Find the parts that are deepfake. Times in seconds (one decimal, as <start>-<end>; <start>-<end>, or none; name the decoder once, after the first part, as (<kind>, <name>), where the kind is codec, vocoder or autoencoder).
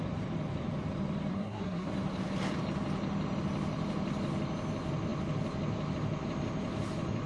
1.3-1.9 (codec, SNAC)